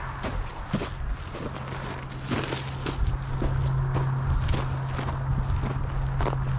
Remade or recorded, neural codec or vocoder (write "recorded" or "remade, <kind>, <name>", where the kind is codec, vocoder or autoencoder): recorded